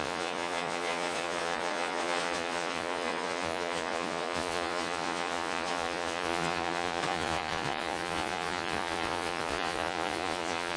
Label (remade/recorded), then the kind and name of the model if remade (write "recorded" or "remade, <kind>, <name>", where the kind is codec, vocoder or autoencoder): remade, vocoder, Vocos